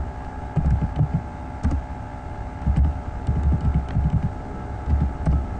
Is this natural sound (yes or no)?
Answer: yes